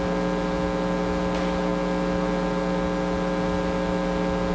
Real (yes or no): yes